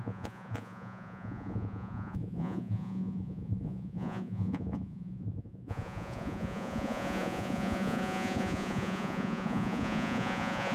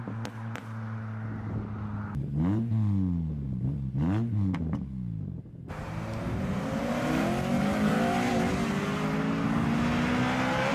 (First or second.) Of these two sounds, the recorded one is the second